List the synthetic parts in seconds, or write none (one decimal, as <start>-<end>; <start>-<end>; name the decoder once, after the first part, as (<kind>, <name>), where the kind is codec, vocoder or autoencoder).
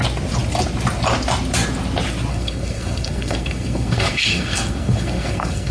2.3-5.7 (codec, SNAC)